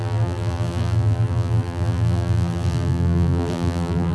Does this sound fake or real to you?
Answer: fake